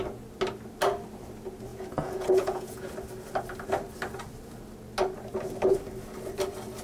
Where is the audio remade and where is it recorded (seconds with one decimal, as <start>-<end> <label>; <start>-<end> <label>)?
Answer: 0.0-1.7 recorded; 1.7-2.9 remade; 2.9-6.8 recorded